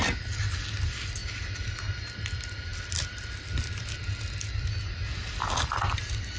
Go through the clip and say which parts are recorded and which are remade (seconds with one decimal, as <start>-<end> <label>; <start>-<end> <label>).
0.0-6.4 recorded